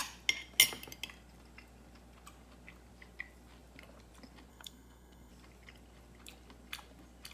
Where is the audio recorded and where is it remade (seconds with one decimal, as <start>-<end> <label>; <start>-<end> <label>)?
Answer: 0.0-4.5 recorded; 4.5-5.3 remade; 5.3-7.3 recorded